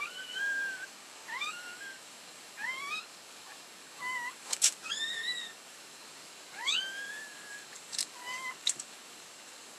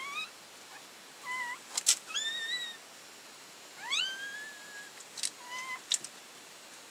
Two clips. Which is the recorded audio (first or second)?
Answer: second